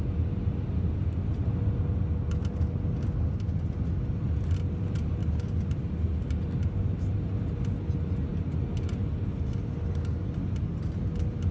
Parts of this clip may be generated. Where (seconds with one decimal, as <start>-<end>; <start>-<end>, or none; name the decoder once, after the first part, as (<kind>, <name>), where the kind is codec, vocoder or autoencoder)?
none